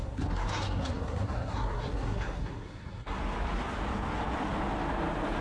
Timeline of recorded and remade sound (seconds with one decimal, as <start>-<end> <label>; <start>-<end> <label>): 0.0-3.2 remade; 3.2-5.4 recorded